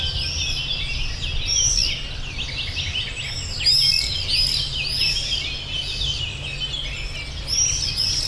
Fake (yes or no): no